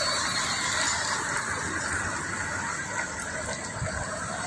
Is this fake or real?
real